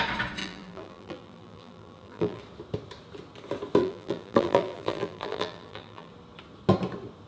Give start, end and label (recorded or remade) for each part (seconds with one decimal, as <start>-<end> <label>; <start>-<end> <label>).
0.0-0.4 recorded; 0.4-2.4 remade; 2.4-3.8 recorded; 3.8-6.1 remade; 6.1-7.3 recorded